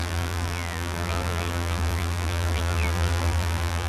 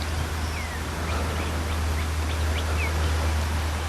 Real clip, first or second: second